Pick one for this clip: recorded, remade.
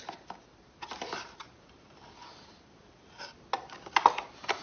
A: recorded